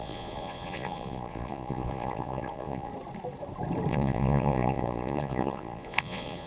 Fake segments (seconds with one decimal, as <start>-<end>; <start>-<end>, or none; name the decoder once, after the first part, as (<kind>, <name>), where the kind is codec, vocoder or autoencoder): 0.0-2.9 (vocoder, Vocos); 3.9-6.5